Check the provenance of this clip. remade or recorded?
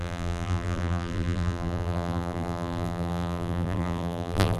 remade